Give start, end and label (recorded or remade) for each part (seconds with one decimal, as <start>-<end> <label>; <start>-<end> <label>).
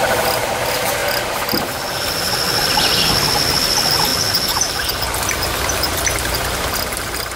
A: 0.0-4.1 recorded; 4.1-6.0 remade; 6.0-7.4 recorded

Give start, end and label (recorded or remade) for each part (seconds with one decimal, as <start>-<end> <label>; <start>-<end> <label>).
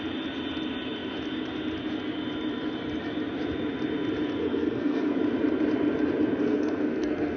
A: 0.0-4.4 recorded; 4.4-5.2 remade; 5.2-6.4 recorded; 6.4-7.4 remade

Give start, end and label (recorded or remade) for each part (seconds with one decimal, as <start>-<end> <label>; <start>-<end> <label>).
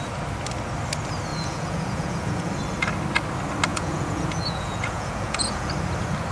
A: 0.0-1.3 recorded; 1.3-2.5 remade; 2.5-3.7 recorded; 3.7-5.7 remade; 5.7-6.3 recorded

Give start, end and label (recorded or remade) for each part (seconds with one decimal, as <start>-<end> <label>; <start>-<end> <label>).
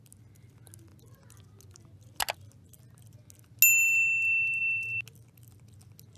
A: 0.0-6.2 recorded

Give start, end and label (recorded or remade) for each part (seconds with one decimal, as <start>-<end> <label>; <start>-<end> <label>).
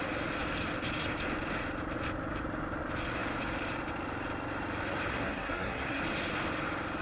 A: 0.0-5.1 recorded; 5.1-6.0 remade; 6.0-7.0 recorded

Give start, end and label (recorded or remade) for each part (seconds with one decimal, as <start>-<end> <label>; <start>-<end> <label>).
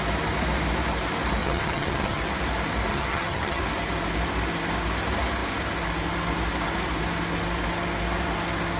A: 0.0-1.4 recorded; 1.4-2.2 remade; 2.2-2.9 recorded; 2.9-3.6 remade; 3.6-8.8 recorded